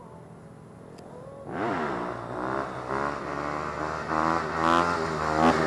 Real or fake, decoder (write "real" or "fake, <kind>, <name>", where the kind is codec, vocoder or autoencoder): real